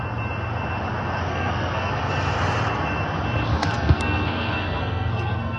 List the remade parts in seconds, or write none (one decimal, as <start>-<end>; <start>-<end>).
1.3-1.9; 3.6-5.6